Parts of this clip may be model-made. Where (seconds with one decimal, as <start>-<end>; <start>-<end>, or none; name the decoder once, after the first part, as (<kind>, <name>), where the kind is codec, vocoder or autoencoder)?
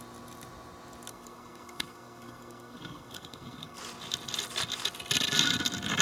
1.1-3.8 (codec, SNAC)